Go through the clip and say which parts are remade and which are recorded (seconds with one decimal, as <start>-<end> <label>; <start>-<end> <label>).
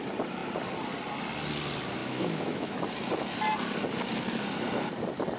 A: 0.0-2.0 recorded; 2.0-2.8 remade; 2.8-5.4 recorded